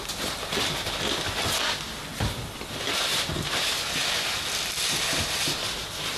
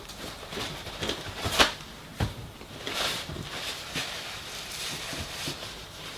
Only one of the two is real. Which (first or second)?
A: first